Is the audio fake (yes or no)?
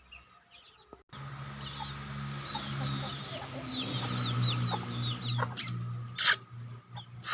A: no